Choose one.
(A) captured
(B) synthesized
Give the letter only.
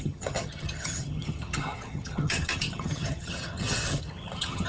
B